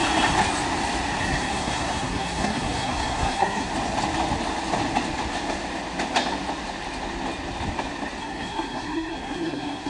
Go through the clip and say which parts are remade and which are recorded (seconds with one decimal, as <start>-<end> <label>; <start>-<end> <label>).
0.0-1.2 recorded; 1.2-3.7 remade; 3.7-8.2 recorded; 8.2-9.9 remade